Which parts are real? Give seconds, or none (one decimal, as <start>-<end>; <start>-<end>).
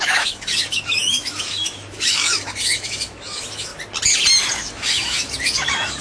3.7-4.5